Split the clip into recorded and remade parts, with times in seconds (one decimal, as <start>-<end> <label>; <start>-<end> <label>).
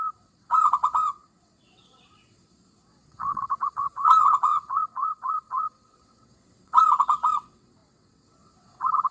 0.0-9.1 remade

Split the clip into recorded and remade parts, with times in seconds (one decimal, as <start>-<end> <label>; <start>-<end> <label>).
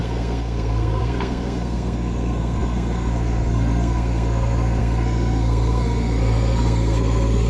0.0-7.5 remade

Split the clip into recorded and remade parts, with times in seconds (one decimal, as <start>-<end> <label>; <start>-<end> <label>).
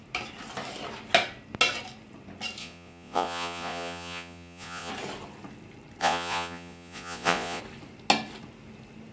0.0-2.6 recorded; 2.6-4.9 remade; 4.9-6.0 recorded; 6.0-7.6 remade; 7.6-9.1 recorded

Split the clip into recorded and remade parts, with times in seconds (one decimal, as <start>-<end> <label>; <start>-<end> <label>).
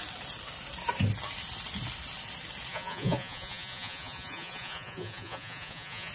0.0-2.7 recorded; 2.7-6.1 remade